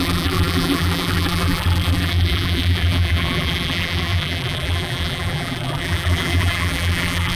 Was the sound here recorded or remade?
remade